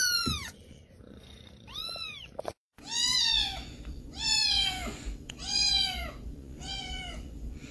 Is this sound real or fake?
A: fake